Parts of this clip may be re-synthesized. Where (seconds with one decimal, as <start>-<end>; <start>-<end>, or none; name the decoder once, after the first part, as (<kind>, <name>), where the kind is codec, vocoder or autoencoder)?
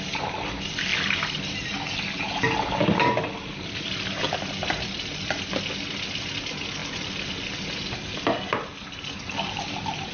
6.8-7.3 (vocoder, BigVGAN v2)